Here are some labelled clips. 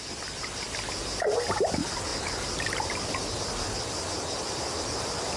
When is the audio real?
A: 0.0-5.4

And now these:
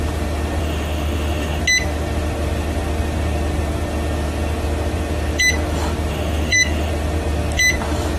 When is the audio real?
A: 0.0-0.6; 1.6-6.1; 6.9-8.2

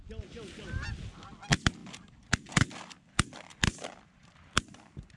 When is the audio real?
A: 0.0-1.8; 4.3-5.2

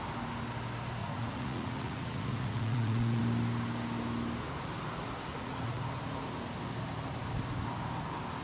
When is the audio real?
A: 0.0-1.0; 3.2-5.3; 5.8-8.4